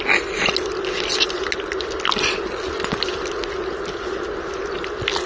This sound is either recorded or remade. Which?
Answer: recorded